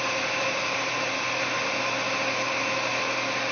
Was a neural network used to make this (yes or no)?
no